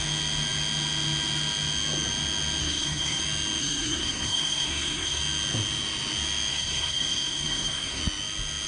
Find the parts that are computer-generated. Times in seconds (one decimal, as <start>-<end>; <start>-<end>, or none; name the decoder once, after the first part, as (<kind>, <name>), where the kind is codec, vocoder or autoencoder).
2.6-3.2 (codec, SNAC); 3.6-5.2; 6.5-8.0